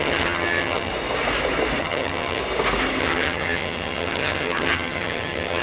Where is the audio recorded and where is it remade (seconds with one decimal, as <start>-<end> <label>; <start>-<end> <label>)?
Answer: 0.0-0.9 remade; 0.9-1.8 recorded; 1.8-2.4 remade; 2.4-3.0 recorded; 3.0-5.6 remade